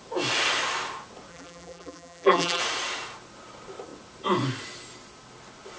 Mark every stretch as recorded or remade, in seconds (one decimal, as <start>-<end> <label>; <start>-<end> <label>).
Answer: 0.0-1.3 recorded; 1.3-2.6 remade; 2.6-5.8 recorded